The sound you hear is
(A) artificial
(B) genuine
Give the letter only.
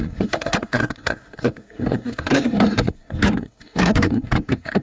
A